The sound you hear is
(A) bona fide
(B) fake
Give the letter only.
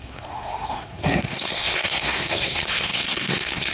B